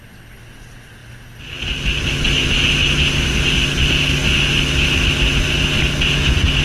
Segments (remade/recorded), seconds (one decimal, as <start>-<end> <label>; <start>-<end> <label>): 0.0-6.6 recorded